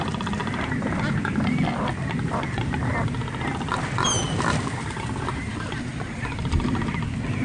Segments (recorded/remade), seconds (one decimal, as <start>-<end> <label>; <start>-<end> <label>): 0.0-5.5 recorded; 5.5-6.9 remade; 6.9-7.4 recorded